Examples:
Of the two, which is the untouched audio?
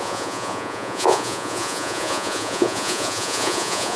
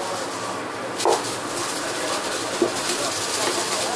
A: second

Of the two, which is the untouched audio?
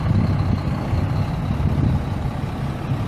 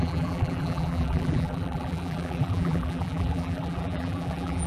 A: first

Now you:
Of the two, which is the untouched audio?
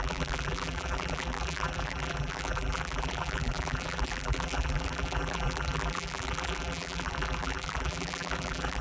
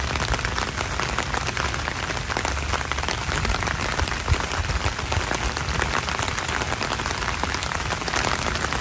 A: second